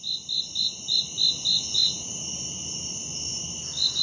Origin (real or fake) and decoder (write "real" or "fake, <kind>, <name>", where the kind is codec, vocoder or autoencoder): real